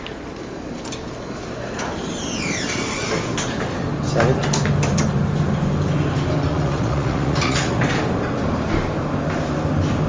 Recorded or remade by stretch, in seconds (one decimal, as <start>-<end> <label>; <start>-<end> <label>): 0.0-6.5 recorded; 6.5-7.8 remade; 7.8-10.1 recorded